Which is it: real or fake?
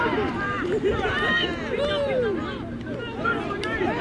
fake